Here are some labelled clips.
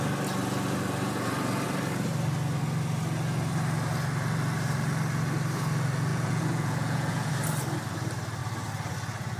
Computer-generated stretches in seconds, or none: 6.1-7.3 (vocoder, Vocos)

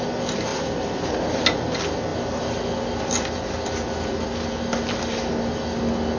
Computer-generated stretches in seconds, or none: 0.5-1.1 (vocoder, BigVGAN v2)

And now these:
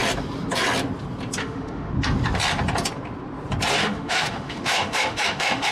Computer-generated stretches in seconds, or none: 1.4-1.9 (autoencoder, DAC-VAE); 3.8-5.7

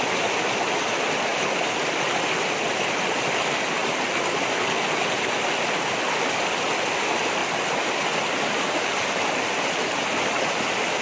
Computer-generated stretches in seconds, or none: none

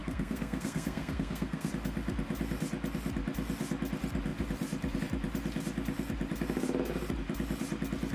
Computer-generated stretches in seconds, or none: 0.0-1.7 (codec, SNAC)

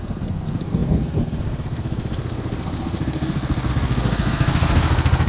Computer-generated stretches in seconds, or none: 0.0-5.3 (codec, SNAC)